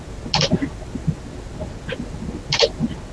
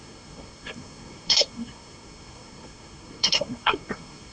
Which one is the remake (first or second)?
second